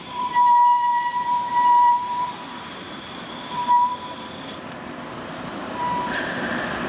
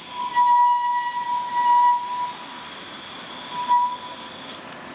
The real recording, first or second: second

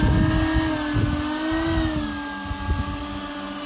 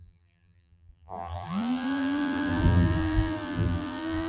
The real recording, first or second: first